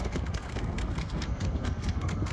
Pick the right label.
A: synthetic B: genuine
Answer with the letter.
A